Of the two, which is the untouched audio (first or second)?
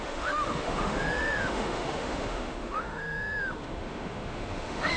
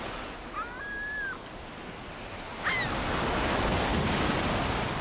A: second